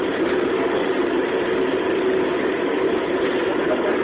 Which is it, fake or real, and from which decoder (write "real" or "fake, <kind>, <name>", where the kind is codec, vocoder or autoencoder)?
real